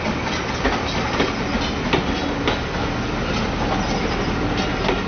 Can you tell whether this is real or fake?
real